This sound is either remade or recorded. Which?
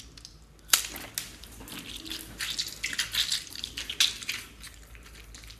recorded